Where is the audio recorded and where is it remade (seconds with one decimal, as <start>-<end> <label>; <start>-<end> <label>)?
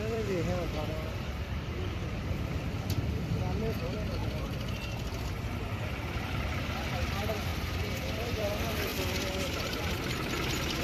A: 0.0-10.8 remade